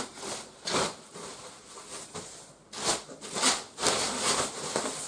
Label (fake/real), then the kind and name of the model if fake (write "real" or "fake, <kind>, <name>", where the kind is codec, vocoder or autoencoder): real